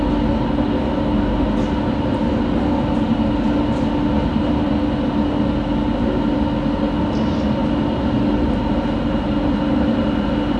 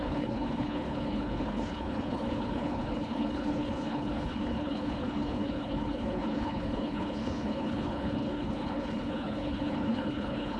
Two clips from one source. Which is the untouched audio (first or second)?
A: first